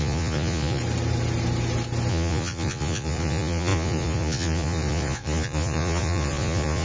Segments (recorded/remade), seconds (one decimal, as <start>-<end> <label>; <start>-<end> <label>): 0.0-0.8 remade; 0.8-2.1 recorded; 2.1-6.8 remade